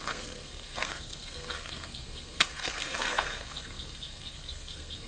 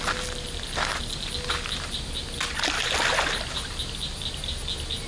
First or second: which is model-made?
first